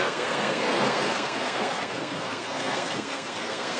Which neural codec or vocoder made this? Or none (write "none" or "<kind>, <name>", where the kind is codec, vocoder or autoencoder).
codec, SNAC